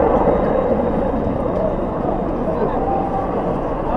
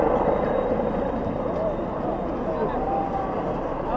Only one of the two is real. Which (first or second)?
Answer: second